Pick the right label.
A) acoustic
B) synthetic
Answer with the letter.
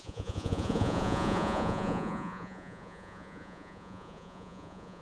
B